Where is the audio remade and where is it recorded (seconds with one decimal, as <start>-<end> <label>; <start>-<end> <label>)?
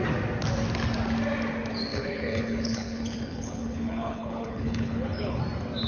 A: 0.0-1.9 recorded; 1.9-5.4 remade; 5.4-5.9 recorded